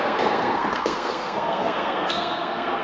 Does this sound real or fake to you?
fake